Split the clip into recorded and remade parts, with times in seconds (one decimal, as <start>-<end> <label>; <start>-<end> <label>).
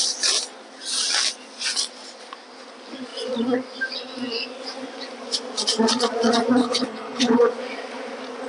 0.0-6.6 recorded; 6.6-7.5 remade; 7.5-8.5 recorded